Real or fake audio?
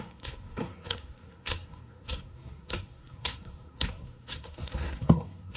fake